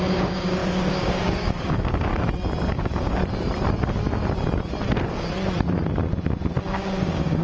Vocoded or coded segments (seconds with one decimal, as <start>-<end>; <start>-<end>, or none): 0.0-2.1; 2.7-3.2; 6.6-7.4